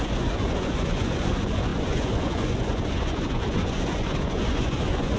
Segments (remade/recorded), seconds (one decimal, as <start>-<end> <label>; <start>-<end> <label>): 0.0-5.2 remade